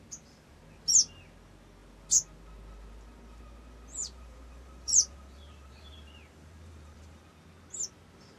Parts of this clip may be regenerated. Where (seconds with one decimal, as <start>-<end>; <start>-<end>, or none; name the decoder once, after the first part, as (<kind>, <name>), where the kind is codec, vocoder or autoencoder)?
4.0-7.2 (vocoder, BigVGAN v2)